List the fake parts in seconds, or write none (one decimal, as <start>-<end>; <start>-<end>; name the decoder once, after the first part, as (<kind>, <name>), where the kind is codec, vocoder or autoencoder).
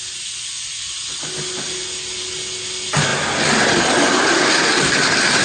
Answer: none